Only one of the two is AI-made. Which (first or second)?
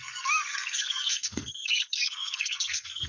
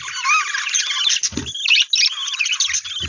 first